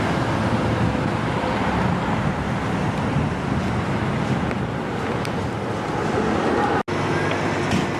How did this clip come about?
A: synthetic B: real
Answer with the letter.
B